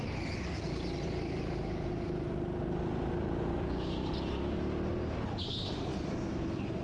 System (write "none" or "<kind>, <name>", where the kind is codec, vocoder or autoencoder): none